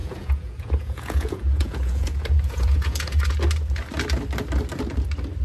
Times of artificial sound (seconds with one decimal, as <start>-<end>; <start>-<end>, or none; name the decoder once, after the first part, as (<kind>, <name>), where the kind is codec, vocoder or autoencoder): 0.0-3.2 (vocoder, Vocos)